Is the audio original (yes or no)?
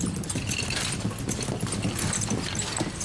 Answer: yes